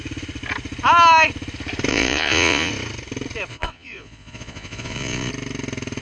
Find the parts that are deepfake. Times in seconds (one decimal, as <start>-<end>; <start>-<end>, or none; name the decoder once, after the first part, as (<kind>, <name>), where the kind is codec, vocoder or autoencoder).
1.9-2.7 (vocoder, Vocos); 3.5-5.3